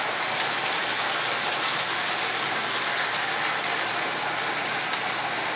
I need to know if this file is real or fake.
real